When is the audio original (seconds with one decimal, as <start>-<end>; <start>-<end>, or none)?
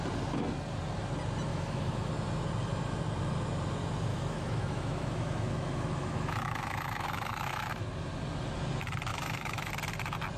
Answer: 0.0-1.5; 2.1-4.1; 7.8-9.1; 9.7-10.4